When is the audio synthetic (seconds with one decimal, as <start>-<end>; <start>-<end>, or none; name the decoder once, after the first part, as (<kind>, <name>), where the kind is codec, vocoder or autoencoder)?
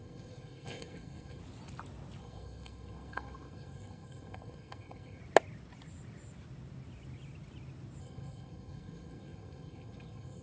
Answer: 0.0-1.4 (codec, SNAC); 2.2-5.2; 8.0-10.4